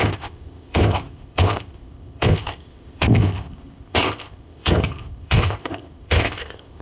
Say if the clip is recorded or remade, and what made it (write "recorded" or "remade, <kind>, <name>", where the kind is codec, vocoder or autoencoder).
remade, codec, ZipCodec